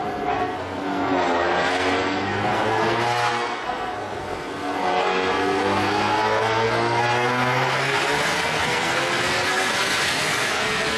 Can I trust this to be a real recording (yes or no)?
no